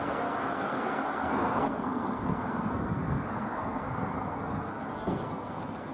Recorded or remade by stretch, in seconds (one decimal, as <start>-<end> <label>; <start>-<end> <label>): 0.0-5.9 remade